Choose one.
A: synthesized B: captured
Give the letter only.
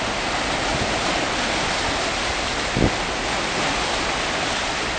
B